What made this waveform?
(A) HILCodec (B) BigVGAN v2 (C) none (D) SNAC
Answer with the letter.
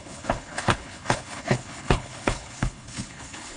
A